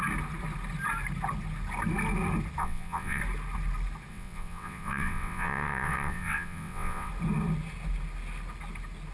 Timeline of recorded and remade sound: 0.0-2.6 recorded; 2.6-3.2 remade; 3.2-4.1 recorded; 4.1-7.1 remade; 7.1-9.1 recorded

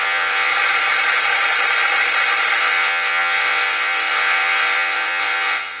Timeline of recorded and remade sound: 0.0-0.5 remade; 0.5-2.6 recorded; 2.6-5.8 remade

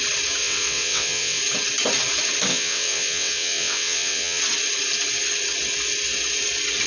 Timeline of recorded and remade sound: 0.0-0.4 recorded; 0.4-1.4 remade; 1.4-2.5 recorded; 2.5-4.4 remade; 4.4-6.9 recorded

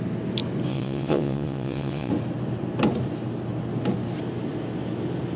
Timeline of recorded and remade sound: 0.0-0.7 recorded; 0.7-2.1 remade; 2.1-5.4 recorded